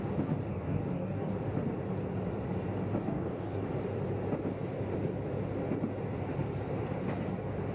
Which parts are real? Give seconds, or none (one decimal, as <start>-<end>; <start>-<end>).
0.0-0.5; 1.3-3.0; 3.6-7.7